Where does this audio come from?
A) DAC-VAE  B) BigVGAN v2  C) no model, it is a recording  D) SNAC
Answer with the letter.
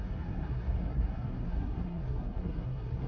D